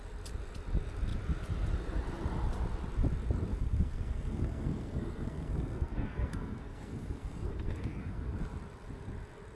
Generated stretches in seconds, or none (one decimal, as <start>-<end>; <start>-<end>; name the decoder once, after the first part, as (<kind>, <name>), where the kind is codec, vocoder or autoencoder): 3.5-8.4 (codec, SNAC)